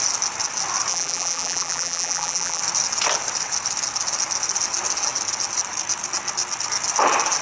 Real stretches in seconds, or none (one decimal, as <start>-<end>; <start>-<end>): 0.0-0.9; 2.6-7.4